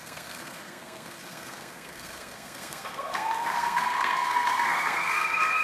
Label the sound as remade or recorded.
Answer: remade